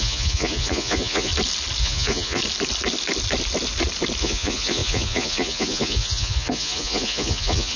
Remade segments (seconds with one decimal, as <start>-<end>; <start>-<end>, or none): 0.0-1.3; 1.8-2.4; 4.2-7.8